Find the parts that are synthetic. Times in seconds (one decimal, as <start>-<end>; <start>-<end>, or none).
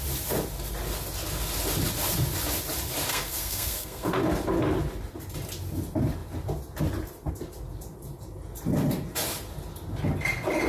3.1-4.1